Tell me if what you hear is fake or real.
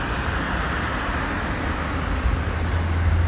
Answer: real